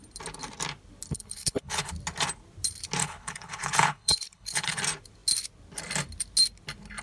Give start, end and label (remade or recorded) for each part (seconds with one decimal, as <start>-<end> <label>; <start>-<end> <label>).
0.0-1.1 recorded; 1.1-1.9 remade; 1.9-3.0 recorded; 3.0-4.8 remade; 4.8-7.0 recorded